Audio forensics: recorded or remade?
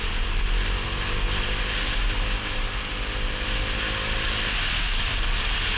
recorded